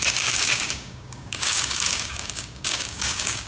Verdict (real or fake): fake